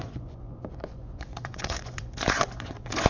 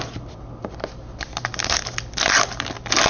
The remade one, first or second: first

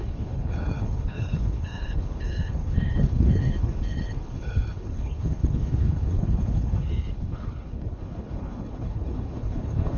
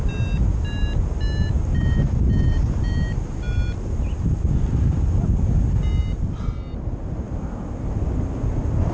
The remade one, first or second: first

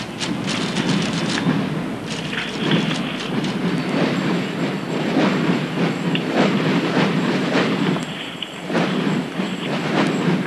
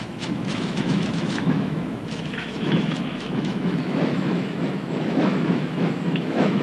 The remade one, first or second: second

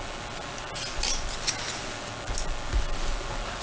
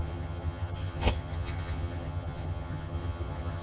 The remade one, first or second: second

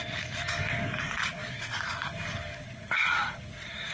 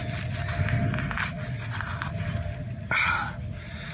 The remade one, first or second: first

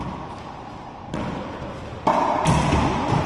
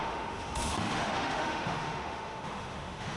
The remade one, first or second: second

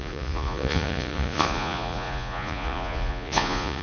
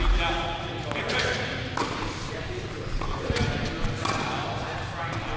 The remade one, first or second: first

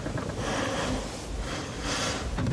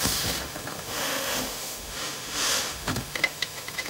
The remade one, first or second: second